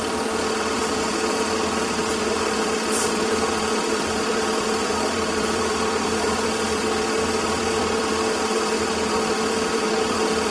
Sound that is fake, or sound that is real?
fake